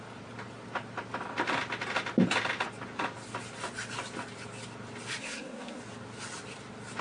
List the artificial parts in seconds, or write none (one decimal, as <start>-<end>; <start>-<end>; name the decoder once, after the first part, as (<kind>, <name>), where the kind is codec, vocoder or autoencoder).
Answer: 5.2-5.8 (codec, SNAC)